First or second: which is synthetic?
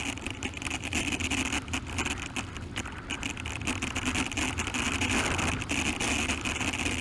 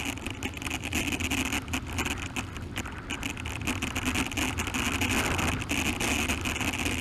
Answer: first